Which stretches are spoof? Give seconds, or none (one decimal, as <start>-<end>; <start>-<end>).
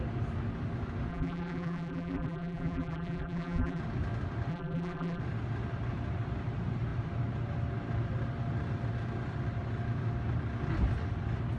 1.1-3.8; 4.5-5.2